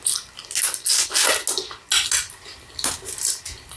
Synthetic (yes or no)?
no